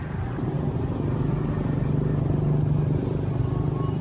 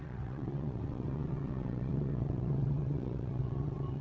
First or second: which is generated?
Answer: second